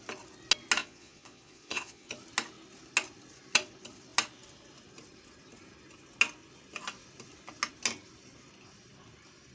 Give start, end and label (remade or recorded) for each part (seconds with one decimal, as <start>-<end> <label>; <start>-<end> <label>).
0.0-0.8 recorded; 0.8-2.1 remade; 2.1-9.5 recorded